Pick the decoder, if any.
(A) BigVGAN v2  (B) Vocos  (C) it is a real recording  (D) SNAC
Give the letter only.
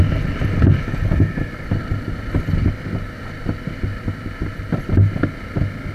C